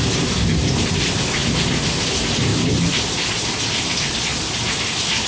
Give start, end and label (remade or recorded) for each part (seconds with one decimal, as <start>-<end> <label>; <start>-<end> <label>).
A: 0.0-5.3 recorded